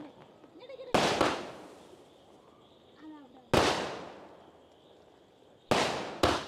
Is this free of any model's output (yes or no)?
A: yes